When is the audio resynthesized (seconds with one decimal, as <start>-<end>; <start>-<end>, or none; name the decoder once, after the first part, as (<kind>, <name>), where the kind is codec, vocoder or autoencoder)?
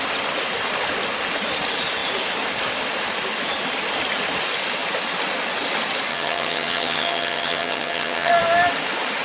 6.1-8.3 (vocoder, HiFi-GAN)